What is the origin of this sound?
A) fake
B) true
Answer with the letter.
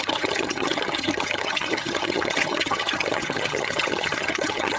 A